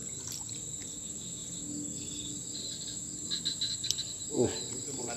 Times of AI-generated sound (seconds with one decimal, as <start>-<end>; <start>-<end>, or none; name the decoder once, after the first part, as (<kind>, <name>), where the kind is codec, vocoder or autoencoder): none